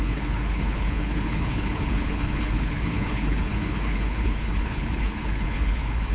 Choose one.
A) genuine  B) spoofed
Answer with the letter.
B